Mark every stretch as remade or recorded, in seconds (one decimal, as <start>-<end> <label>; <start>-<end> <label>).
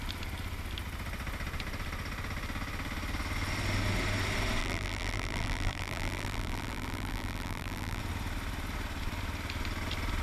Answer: 0.0-4.6 recorded; 4.6-8.0 remade; 8.0-10.2 recorded